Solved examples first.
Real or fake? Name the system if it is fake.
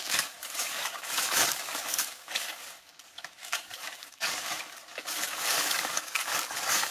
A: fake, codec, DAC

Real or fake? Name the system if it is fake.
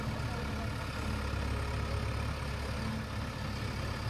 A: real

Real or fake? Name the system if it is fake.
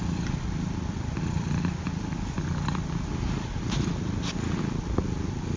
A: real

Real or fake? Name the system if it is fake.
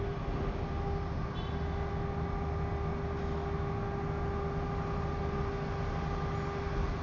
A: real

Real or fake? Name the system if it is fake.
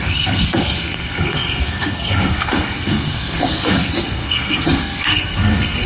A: fake, codec, SNAC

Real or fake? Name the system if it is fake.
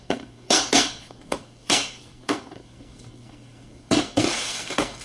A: fake, codec, SNAC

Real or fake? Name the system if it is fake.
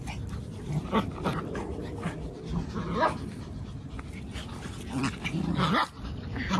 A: real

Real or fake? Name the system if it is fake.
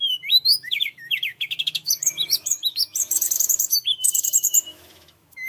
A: fake, autoencoder, DAC-VAE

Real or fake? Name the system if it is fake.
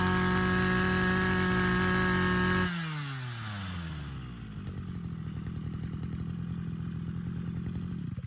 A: real